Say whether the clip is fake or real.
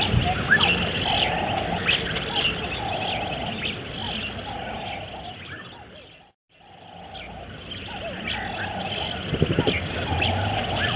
real